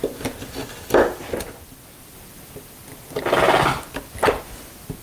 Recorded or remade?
recorded